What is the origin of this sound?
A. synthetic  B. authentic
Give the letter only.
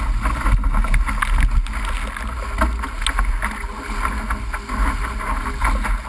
B